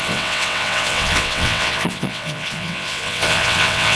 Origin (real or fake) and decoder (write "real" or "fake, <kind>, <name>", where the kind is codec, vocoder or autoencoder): fake, vocoder, WaveNeXt